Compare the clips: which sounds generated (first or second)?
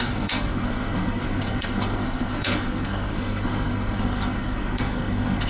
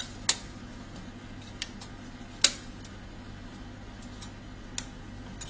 first